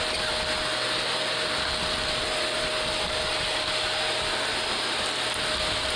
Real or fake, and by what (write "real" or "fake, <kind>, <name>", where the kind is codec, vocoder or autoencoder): real